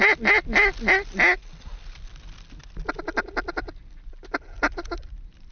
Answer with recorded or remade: recorded